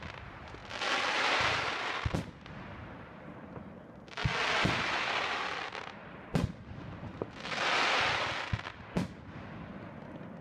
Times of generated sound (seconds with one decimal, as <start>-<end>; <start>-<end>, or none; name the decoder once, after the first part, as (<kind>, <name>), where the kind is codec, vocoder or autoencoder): none